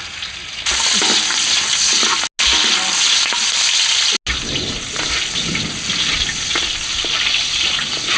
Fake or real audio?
real